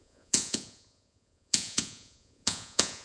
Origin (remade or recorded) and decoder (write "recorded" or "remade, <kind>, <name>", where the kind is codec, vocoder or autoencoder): remade, vocoder, Vocos